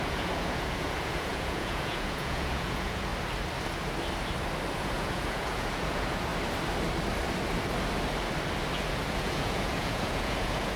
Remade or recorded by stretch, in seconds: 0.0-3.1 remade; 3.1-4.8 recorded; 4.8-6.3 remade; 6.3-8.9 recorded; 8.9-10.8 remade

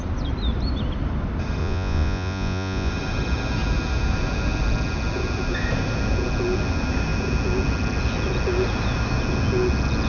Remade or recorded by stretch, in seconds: 0.0-1.6 recorded; 1.6-2.9 remade; 2.9-10.1 recorded

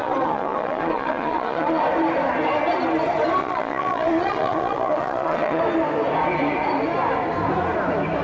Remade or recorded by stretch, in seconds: 0.0-1.8 remade; 1.8-3.4 recorded; 3.4-5.6 remade; 5.6-8.2 recorded

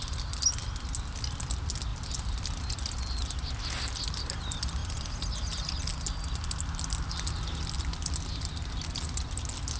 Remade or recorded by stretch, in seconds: 0.0-9.8 recorded

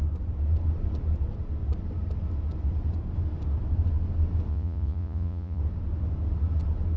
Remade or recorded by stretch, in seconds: 0.0-4.5 recorded; 4.5-5.6 remade; 5.6-7.0 recorded

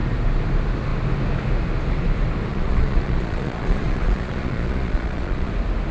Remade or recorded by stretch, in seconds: 0.0-2.5 recorded; 2.5-5.5 remade; 5.5-5.9 recorded

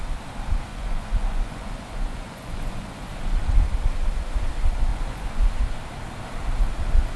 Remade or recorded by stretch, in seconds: 0.0-0.7 recorded; 0.7-3.1 remade; 3.1-4.9 recorded; 4.9-5.6 remade; 5.6-7.2 recorded

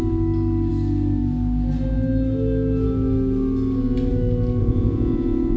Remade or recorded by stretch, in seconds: 0.0-4.6 recorded; 4.6-5.6 remade